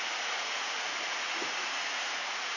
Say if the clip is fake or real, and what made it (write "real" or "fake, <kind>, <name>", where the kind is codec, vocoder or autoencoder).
fake, vocoder, Vocos